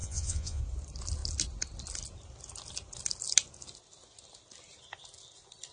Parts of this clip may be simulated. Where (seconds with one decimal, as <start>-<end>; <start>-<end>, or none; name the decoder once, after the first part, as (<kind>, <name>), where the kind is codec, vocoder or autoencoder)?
0.0-0.6 (vocoder, Vocos)